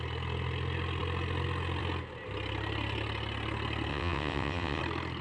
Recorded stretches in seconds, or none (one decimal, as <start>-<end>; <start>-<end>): 0.0-3.9; 4.8-5.2